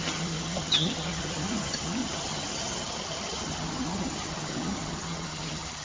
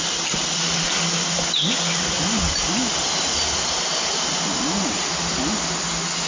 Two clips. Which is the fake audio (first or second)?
first